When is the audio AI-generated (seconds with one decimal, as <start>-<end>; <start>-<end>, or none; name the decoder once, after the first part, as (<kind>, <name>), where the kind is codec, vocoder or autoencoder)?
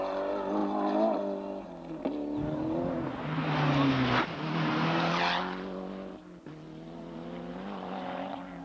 none